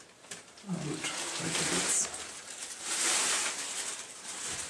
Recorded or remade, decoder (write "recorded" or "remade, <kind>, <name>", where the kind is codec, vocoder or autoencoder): remade, vocoder, BigVGAN v2